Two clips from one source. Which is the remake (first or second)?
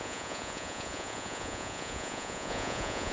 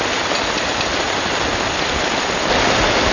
first